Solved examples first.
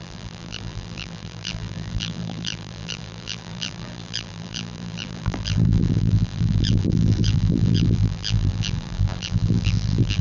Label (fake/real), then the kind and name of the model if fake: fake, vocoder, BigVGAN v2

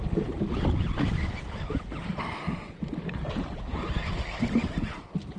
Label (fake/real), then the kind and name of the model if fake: real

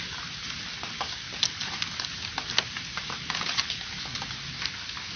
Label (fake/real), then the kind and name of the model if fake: real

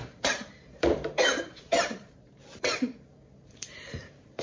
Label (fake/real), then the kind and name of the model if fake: fake, vocoder, BigVGAN v2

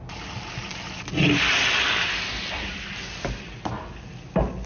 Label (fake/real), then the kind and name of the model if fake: real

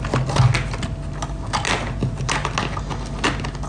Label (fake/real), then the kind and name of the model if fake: real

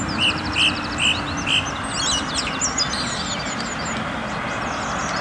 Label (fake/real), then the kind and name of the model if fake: real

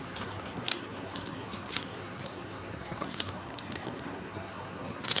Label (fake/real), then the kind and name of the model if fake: fake, codec, SNAC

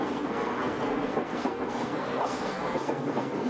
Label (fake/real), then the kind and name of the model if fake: fake, codec, SNAC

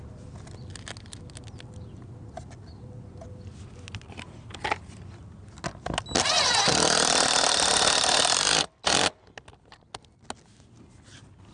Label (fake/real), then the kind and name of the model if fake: real